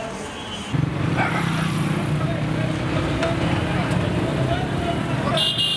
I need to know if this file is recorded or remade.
recorded